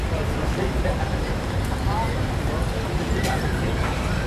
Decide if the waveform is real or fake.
real